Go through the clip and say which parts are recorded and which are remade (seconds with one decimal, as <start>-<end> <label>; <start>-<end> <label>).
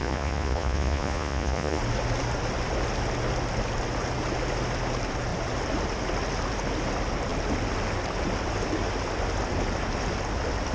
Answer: 0.0-1.8 remade; 1.8-10.7 recorded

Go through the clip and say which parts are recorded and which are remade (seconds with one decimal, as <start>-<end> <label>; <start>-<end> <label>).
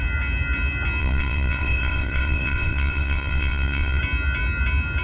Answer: 0.0-1.0 recorded; 1.0-4.0 remade; 4.0-5.0 recorded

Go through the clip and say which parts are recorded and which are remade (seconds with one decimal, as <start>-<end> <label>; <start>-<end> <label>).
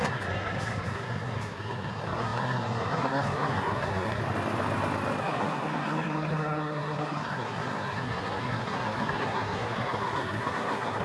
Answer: 0.0-4.2 remade; 4.2-5.2 recorded; 5.2-11.0 remade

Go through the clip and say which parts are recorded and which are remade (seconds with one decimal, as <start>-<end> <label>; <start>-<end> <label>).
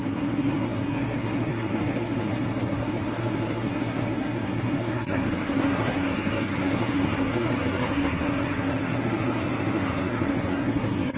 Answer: 0.0-11.2 remade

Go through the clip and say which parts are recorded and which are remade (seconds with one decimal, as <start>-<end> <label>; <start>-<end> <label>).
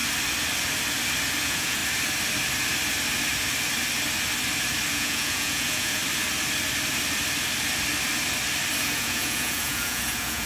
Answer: 0.0-1.4 recorded; 1.4-1.8 remade; 1.8-4.9 recorded; 4.9-6.0 remade; 6.0-8.8 recorded; 8.8-10.5 remade